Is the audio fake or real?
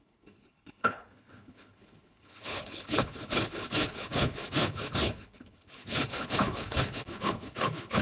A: fake